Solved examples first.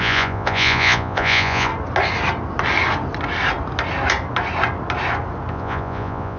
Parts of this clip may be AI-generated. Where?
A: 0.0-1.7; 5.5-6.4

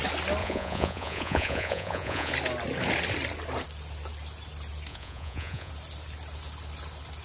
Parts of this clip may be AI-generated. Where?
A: 0.4-2.3; 4.9-5.7

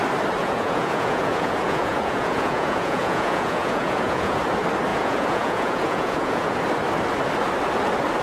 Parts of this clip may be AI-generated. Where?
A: 0.4-4.4; 4.9-6.6